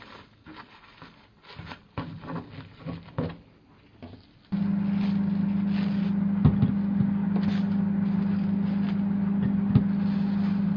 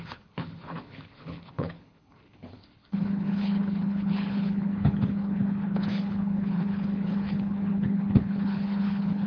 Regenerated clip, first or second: second